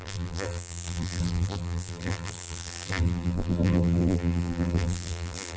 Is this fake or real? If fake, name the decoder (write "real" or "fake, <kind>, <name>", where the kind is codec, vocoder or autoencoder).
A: fake, vocoder, BigVGAN v2